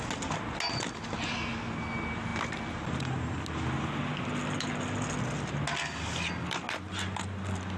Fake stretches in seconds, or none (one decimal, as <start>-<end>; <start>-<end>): none